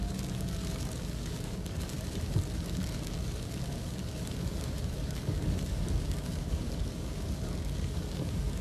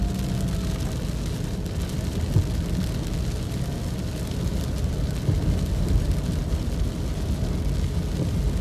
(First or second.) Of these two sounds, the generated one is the first